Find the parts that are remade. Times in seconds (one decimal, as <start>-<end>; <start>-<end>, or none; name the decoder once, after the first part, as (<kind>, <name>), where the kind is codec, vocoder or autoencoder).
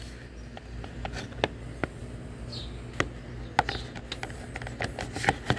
2.0-2.6 (vocoder, BigVGAN v2)